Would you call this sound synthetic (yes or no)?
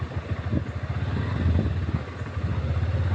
no